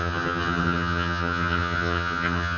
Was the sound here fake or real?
fake